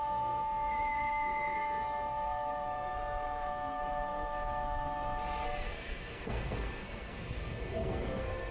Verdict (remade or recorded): remade